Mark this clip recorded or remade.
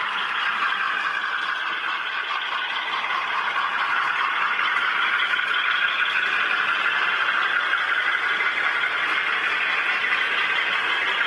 recorded